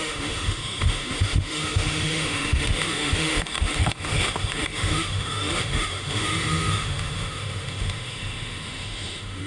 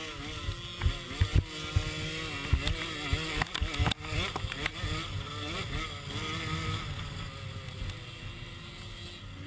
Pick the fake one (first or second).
first